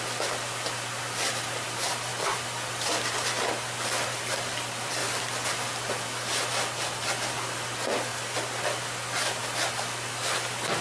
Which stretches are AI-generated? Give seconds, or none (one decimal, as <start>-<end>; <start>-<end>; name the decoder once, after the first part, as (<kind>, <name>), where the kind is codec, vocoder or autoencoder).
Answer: none

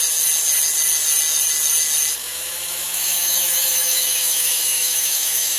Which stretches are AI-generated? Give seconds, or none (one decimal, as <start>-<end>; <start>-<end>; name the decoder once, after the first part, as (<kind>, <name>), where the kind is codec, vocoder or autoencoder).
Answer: 2.2-5.6 (autoencoder, DAC-VAE)